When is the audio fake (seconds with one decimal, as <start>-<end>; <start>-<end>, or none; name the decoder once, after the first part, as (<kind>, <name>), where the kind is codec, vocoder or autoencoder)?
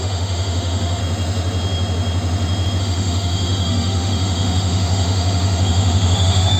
0.0-1.0 (autoencoder, DAC-VAE); 2.8-6.6